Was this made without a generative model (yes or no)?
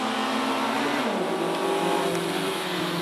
yes